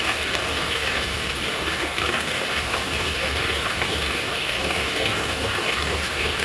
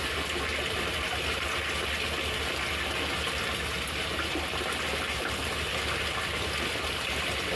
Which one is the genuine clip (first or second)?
second